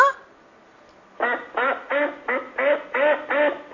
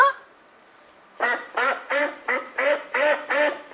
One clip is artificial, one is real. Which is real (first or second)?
first